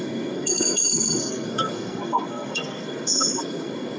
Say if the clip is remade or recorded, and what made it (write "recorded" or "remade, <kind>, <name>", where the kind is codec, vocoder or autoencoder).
remade, codec, SNAC